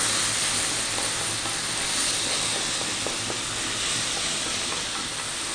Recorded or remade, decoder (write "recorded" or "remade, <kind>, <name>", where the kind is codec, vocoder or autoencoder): recorded